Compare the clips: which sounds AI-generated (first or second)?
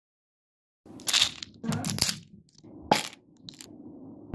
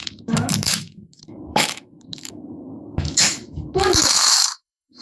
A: second